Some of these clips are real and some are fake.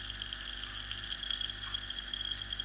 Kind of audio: real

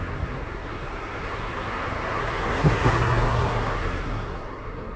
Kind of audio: fake